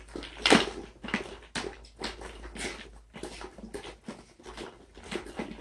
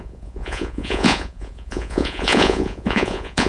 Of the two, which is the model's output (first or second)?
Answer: second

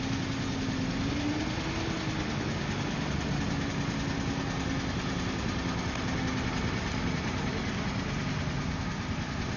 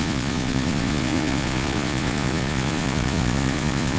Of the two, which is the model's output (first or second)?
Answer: second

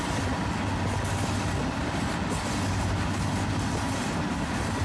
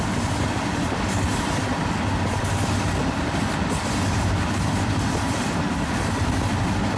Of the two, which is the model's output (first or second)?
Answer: second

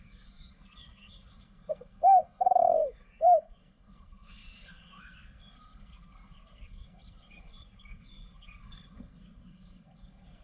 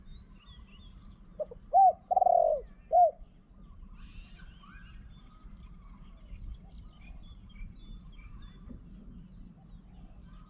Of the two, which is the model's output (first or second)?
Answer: first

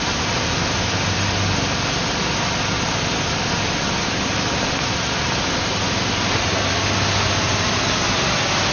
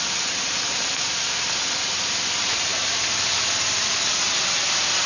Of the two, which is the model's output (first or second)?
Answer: second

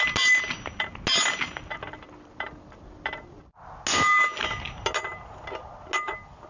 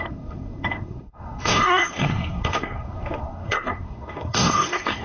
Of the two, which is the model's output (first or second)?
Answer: second